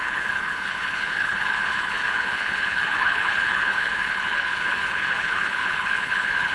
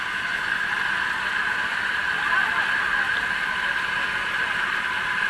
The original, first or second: second